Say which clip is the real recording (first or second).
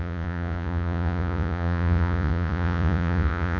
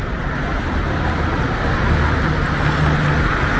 second